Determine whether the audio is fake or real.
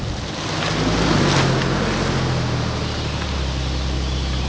real